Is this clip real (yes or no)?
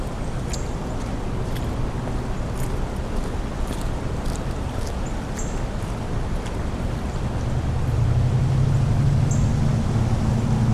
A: yes